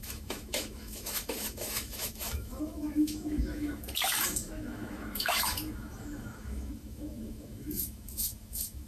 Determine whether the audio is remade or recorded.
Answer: remade